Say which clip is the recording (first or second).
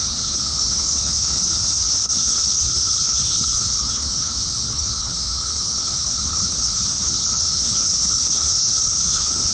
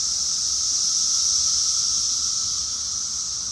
second